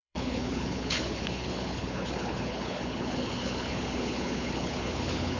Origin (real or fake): fake